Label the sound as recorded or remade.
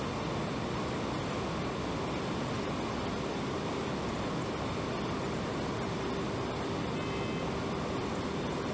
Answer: recorded